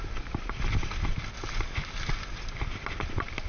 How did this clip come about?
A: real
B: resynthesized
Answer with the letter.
A